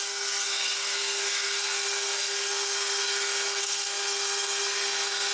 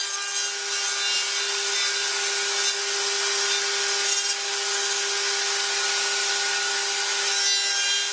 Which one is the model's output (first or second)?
first